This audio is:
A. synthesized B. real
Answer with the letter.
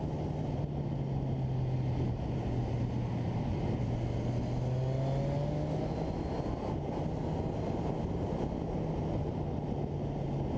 B